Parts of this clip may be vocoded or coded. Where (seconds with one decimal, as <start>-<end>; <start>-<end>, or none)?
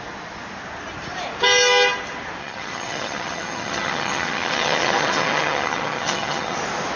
2.4-6.6